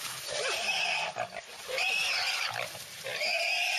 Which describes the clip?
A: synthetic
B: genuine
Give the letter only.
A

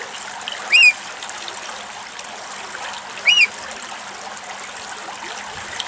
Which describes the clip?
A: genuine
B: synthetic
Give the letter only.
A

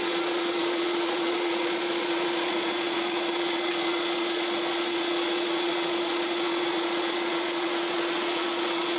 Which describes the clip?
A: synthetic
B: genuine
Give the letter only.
A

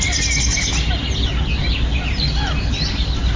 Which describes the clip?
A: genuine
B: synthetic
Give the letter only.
A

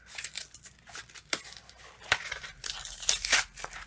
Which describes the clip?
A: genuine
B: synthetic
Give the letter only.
A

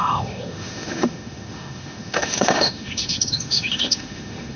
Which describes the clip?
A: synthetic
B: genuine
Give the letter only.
A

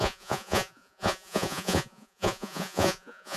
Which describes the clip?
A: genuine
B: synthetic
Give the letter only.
B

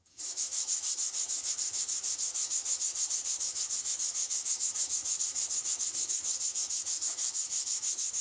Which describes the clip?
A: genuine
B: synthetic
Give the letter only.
B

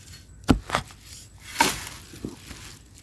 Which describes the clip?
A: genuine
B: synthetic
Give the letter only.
A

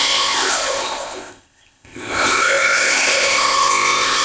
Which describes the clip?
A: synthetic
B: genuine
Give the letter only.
A